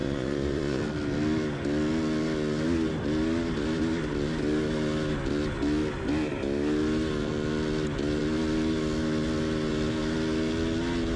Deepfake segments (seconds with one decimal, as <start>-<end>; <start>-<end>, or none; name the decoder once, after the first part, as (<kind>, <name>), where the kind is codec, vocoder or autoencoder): 0.0-0.8 (vocoder, Vocos)